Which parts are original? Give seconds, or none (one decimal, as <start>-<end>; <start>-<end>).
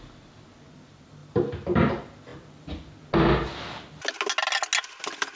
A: 0.0-5.4